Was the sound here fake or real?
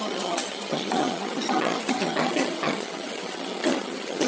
fake